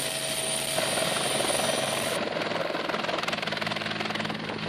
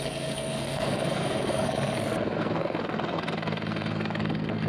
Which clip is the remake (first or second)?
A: second